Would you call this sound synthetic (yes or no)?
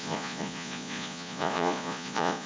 yes